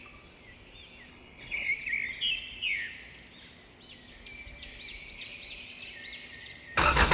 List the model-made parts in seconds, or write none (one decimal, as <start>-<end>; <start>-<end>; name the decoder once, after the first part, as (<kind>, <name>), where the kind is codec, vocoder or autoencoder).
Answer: 1.1-1.7 (codec, HILCodec)